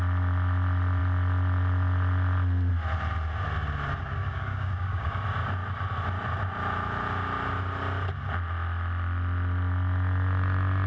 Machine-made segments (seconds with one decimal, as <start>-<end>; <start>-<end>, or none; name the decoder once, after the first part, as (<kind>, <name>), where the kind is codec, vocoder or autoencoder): 4.0-5.2 (codec, DAC)